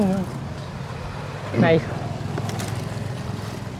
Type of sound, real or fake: real